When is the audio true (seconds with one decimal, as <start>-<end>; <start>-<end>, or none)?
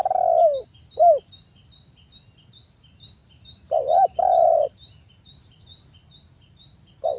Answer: 0.0-3.2; 5.4-7.2